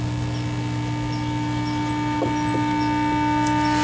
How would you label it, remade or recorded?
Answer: recorded